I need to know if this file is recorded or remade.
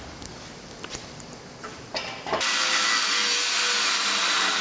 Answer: recorded